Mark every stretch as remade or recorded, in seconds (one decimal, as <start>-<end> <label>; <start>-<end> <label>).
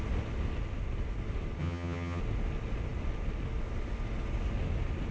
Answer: 0.0-1.6 recorded; 1.6-2.2 remade; 2.2-5.1 recorded